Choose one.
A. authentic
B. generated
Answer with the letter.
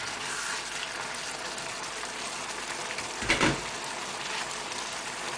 A